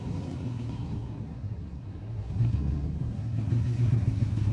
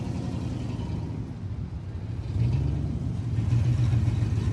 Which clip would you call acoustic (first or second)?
second